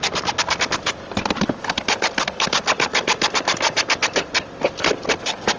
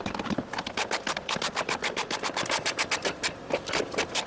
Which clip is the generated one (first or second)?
first